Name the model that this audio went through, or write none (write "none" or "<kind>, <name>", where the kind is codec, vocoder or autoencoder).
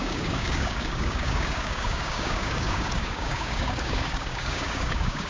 codec, DAC